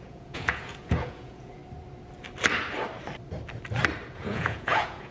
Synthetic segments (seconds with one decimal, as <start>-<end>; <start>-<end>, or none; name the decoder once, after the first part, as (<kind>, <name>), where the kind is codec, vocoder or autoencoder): 0.0-1.6 (vocoder, Vocos); 4.1-5.1